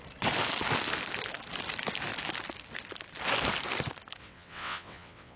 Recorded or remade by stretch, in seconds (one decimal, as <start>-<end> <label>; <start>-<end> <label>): 0.0-4.2 recorded; 4.2-5.4 remade